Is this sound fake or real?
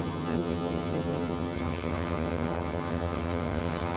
fake